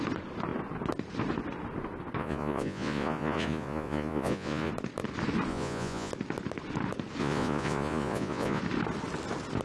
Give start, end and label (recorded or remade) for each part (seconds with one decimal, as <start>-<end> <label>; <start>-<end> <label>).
0.0-2.2 recorded; 2.2-4.7 remade; 4.7-5.5 recorded; 5.5-6.1 remade; 6.1-7.2 recorded; 7.2-8.6 remade; 8.6-9.6 recorded